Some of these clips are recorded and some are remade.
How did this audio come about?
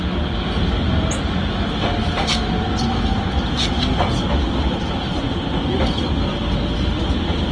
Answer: recorded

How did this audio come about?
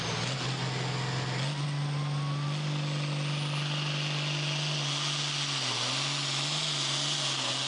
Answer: recorded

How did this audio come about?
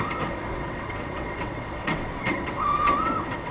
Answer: remade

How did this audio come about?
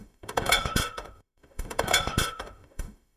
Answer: remade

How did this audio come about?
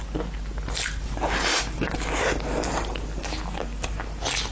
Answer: recorded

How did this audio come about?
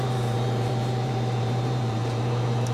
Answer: remade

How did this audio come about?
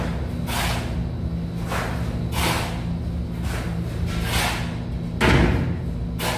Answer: recorded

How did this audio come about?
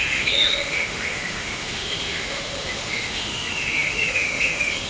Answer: remade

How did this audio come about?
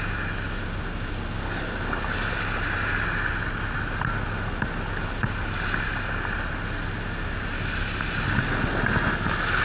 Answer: recorded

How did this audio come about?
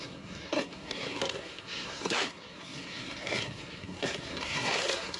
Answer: remade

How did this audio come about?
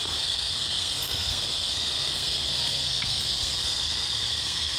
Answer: remade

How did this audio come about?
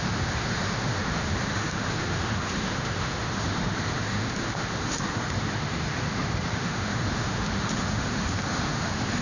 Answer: remade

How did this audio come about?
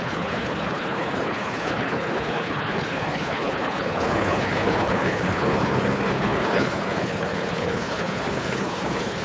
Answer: remade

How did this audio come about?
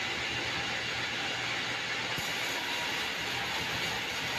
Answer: recorded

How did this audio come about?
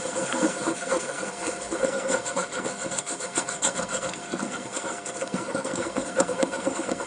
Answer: remade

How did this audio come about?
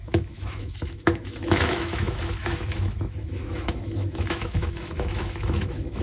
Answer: remade